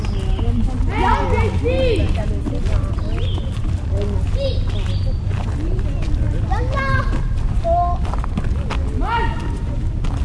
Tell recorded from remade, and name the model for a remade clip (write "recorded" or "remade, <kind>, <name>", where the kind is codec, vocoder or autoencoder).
recorded